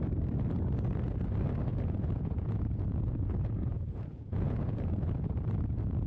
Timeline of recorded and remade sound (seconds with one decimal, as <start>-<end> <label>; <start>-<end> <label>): 0.0-1.7 recorded; 1.7-4.9 remade; 4.9-6.1 recorded